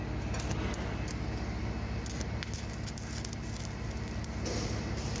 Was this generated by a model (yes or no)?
no